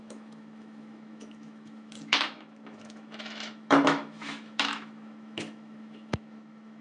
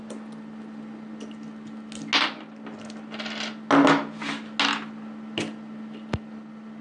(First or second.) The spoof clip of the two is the first